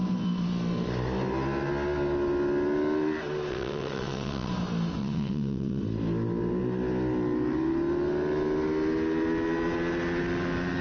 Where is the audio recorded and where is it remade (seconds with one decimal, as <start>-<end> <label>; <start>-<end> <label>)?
0.0-3.5 recorded; 3.5-4.5 remade; 4.5-5.0 recorded; 5.0-5.8 remade; 5.8-10.8 recorded